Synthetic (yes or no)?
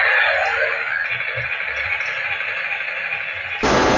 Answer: no